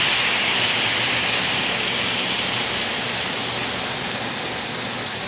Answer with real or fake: real